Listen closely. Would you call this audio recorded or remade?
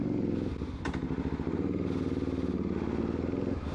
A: recorded